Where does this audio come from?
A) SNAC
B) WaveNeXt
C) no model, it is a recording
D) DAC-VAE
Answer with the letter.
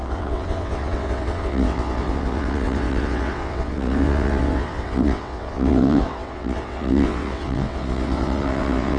B